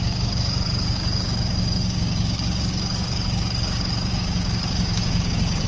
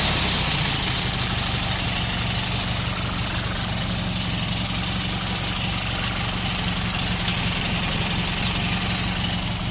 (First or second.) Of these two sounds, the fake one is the first